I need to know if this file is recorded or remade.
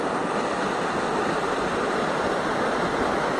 recorded